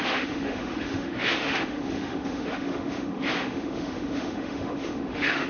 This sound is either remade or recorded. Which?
remade